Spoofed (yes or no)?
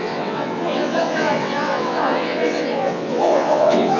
yes